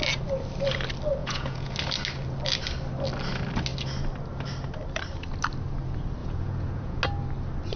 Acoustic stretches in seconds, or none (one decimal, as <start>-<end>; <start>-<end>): 0.0-1.2; 1.7-6.2; 7.0-7.8